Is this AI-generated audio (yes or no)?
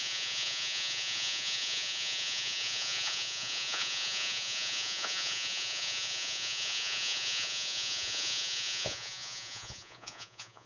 yes